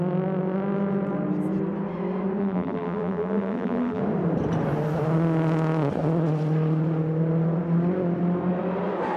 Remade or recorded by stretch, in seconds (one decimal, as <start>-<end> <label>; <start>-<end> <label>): 0.0-2.4 recorded; 2.4-4.0 remade; 4.0-9.2 recorded